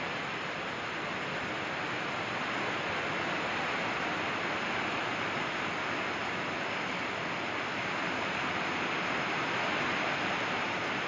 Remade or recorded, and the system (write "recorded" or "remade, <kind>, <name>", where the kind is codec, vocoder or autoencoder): recorded